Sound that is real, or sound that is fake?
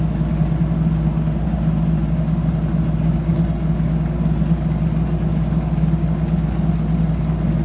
real